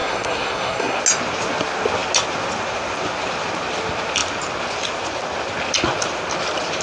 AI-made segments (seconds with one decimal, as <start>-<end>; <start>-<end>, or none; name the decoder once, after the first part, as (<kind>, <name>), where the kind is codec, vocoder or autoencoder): 0.0-1.0 (codec, SNAC)